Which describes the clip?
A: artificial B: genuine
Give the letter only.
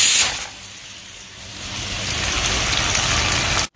B